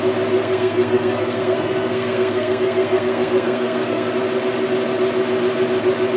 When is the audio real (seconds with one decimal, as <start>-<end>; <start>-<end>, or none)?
0.0-0.4; 4.1-6.2